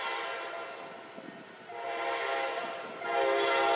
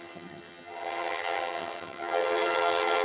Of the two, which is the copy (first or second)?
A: second